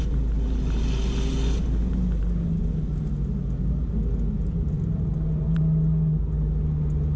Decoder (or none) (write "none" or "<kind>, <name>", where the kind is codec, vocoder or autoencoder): none